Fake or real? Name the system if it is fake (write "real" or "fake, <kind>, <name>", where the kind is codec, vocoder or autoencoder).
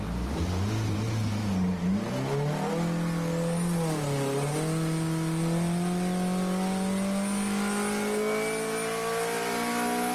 real